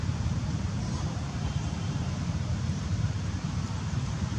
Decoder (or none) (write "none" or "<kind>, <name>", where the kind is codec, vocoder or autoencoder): vocoder, BigVGAN v2